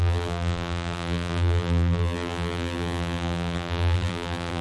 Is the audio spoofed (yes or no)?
yes